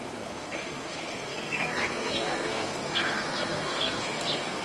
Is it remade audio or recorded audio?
remade